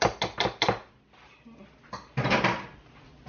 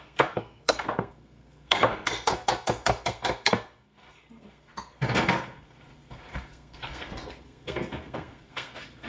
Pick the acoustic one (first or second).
first